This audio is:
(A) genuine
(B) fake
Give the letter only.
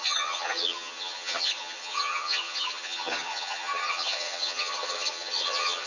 B